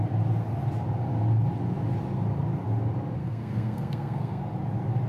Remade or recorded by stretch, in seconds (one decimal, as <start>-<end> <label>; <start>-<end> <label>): 0.0-3.2 recorded; 3.2-4.4 remade; 4.4-5.1 recorded